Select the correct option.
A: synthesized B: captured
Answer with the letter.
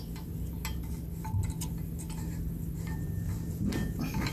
B